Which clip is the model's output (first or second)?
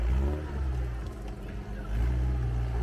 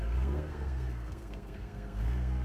second